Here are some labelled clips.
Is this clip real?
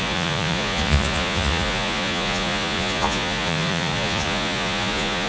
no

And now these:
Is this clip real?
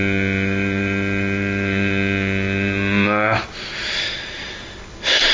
yes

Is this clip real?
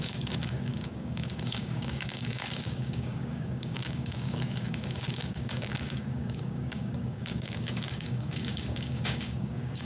no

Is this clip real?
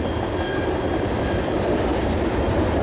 yes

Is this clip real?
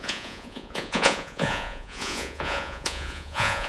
no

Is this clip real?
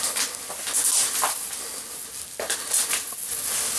yes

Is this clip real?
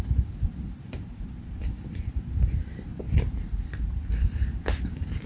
no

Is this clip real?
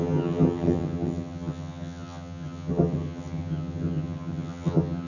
no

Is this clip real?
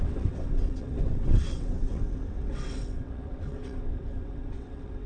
no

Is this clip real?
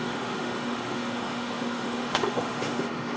no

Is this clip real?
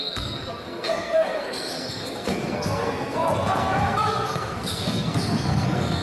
no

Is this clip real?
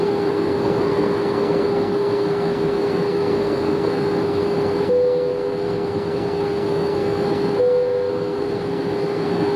no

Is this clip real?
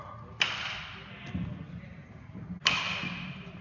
yes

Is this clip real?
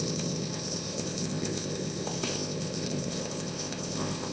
no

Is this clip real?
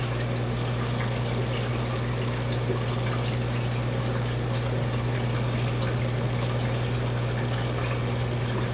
yes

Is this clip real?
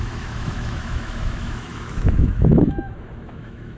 no